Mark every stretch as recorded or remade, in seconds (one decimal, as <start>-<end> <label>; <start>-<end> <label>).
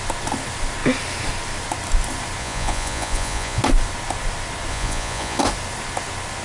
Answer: 0.0-2.4 recorded; 2.4-3.6 remade; 3.6-4.7 recorded; 4.7-5.4 remade; 5.4-6.4 recorded